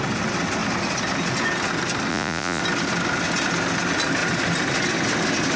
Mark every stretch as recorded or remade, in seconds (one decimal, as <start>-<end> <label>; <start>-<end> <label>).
0.0-2.1 recorded; 2.1-2.6 remade; 2.6-5.6 recorded